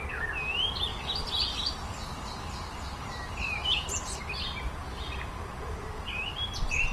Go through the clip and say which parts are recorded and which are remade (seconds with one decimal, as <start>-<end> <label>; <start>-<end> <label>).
0.0-0.9 recorded; 0.9-4.2 remade; 4.2-6.2 recorded; 6.2-6.9 remade